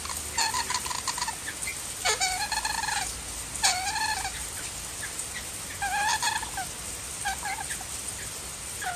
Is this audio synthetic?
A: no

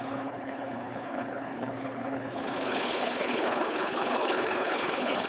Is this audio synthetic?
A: yes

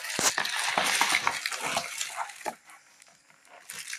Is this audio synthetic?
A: no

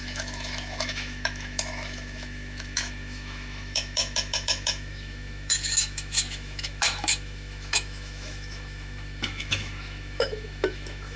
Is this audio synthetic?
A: yes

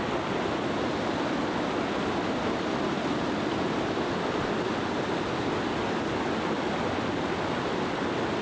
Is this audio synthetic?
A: no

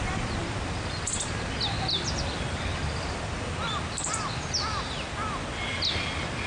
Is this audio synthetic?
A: no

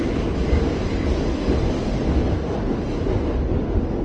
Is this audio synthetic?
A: no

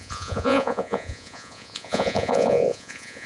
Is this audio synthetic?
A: yes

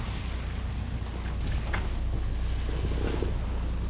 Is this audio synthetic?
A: no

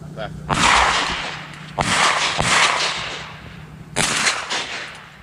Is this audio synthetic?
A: no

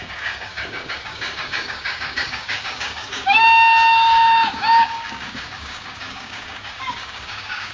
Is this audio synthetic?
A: yes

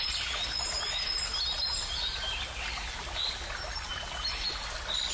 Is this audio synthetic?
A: no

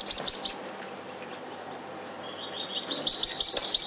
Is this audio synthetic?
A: no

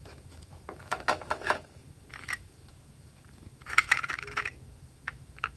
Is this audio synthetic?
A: yes